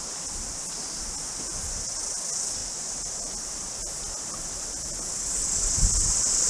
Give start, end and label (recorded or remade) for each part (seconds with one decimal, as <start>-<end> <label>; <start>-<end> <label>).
0.0-1.5 recorded; 1.5-2.2 remade; 2.2-6.5 recorded